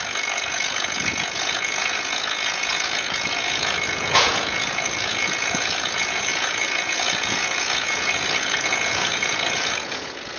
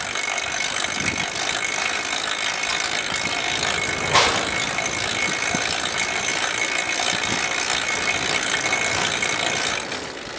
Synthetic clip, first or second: first